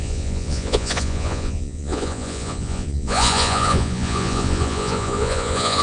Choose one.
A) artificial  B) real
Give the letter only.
A